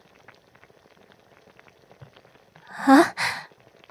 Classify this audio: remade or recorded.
recorded